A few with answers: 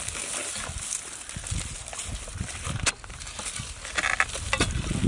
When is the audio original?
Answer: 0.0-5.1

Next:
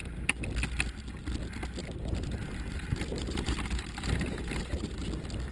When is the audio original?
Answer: 0.0-1.8; 5.1-5.5

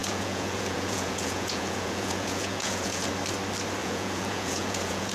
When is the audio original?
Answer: 3.1-3.8

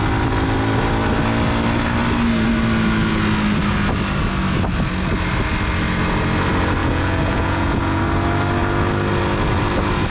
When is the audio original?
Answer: 0.0-6.8; 8.0-10.1

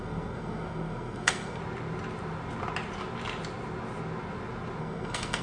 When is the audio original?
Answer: 1.6-4.8